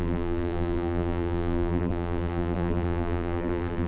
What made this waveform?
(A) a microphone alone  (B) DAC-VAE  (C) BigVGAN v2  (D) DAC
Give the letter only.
C